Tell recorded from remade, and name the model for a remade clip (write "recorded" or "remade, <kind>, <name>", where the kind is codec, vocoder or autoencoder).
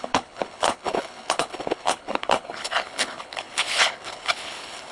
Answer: remade, codec, HILCodec